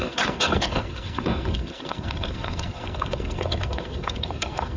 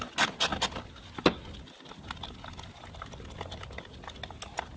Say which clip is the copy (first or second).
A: first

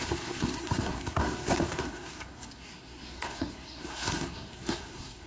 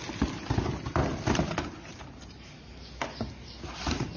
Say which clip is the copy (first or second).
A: first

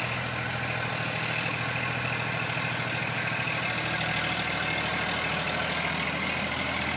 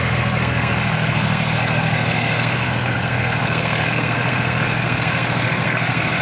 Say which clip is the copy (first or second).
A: second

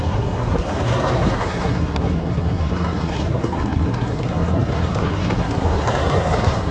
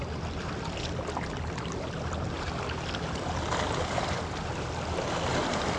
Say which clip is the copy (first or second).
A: first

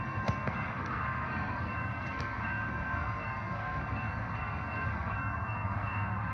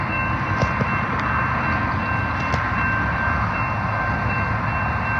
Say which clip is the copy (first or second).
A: first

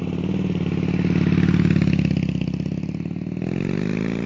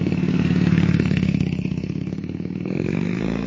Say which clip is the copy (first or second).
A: second